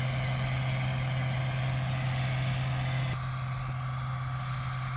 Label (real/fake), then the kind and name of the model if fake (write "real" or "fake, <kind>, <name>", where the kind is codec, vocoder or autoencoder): real